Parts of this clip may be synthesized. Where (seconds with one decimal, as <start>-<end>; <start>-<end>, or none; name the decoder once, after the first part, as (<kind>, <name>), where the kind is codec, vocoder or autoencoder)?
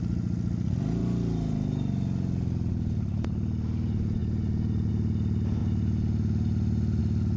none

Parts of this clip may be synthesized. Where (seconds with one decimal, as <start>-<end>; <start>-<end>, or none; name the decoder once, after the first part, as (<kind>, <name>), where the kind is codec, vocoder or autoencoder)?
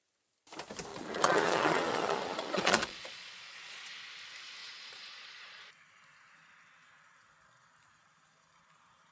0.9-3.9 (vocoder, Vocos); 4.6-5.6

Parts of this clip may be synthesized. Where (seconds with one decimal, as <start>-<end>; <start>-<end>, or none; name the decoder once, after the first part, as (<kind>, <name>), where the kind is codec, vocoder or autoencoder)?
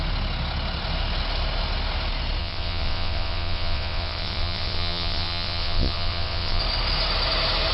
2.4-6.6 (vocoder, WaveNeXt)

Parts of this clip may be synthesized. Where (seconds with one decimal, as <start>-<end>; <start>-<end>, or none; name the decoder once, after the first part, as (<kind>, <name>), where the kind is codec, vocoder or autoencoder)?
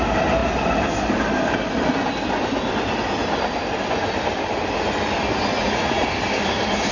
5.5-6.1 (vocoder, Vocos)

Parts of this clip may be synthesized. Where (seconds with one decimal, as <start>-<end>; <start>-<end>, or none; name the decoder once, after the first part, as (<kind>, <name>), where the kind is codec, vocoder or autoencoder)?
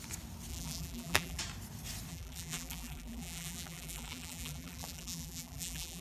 0.5-1.4 (vocoder, BigVGAN v2); 2.1-6.0